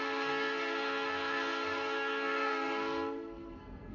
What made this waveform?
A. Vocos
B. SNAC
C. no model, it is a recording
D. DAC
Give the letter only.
B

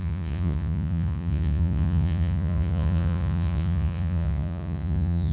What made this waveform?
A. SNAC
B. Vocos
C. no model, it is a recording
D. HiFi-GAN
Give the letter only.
B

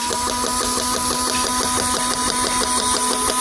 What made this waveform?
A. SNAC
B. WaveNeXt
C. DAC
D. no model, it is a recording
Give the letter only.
D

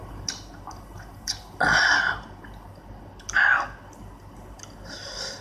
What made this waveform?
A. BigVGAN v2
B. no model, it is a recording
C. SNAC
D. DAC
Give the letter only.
B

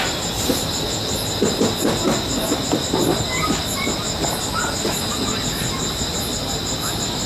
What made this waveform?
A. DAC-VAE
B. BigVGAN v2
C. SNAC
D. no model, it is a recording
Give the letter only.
D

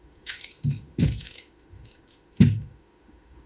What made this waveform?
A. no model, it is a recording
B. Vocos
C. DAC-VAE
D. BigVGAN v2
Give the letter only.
C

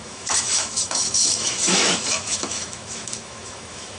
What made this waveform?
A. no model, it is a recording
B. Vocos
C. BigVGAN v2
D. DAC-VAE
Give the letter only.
D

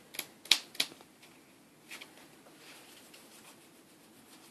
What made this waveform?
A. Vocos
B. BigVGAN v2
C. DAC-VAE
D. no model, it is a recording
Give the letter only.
D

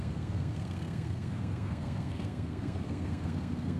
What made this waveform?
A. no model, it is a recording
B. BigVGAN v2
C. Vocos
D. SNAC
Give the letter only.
D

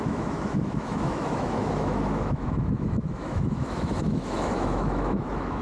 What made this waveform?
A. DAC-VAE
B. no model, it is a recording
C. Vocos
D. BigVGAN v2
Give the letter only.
A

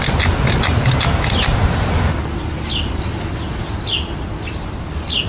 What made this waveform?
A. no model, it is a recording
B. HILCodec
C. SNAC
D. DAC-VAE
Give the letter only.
A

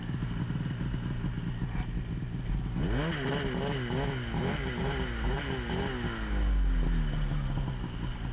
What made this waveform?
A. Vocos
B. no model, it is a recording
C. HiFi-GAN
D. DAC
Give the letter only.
B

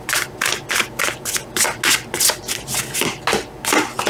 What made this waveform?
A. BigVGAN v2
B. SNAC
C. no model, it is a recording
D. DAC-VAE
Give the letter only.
C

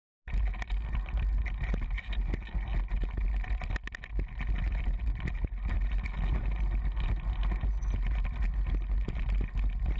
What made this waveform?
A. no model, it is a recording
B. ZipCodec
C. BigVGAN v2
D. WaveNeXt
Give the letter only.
A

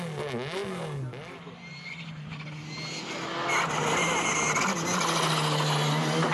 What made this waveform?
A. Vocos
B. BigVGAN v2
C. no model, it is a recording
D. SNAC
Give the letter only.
C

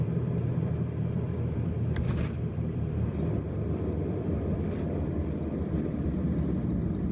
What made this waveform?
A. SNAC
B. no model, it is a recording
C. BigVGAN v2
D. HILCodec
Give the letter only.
C